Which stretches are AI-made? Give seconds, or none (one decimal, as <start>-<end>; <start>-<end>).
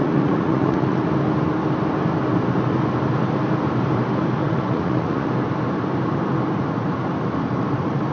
0.0-1.0; 4.4-5.3